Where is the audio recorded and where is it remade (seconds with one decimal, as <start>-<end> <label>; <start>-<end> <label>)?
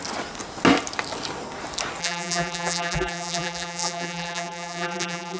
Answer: 0.0-2.0 recorded; 2.0-5.4 remade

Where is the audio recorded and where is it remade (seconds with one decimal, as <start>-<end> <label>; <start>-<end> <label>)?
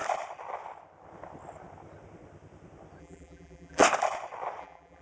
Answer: 0.0-3.0 recorded; 3.0-3.8 remade; 3.8-4.6 recorded; 4.6-5.0 remade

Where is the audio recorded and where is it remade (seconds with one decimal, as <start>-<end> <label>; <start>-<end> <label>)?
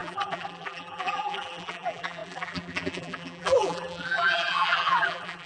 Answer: 0.0-5.5 remade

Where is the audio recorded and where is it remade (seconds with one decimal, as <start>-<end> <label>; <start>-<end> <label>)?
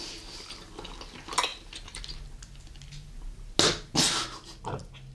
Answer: 0.0-1.5 recorded; 1.5-2.0 remade; 2.0-5.1 recorded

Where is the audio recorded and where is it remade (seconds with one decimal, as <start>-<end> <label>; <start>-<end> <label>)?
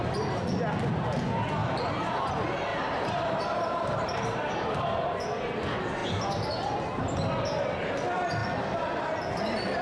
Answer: 0.0-1.6 recorded; 1.6-2.3 remade; 2.3-2.7 recorded; 2.7-5.5 remade; 5.5-9.8 recorded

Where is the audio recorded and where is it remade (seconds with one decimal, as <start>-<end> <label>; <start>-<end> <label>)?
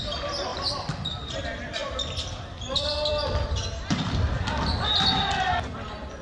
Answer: 0.0-0.5 recorded; 0.5-1.4 remade; 1.4-1.8 recorded; 1.8-5.5 remade; 5.5-6.2 recorded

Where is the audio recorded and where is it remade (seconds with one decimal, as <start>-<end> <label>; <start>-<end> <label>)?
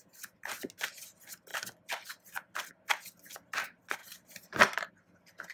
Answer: 0.0-4.0 recorded; 4.0-4.9 remade; 4.9-5.5 recorded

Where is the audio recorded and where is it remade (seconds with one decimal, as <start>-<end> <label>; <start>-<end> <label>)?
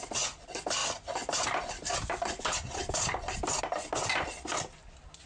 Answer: 0.0-5.3 recorded